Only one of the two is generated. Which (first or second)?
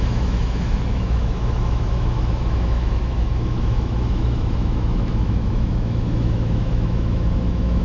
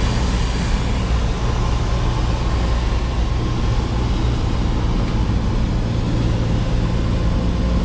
first